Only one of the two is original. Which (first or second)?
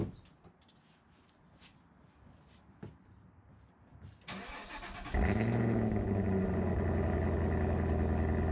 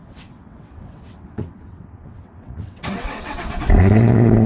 first